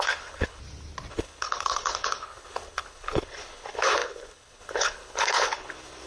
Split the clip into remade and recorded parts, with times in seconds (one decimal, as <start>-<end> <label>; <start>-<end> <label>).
0.0-0.6 remade; 0.6-1.1 recorded; 1.1-6.1 remade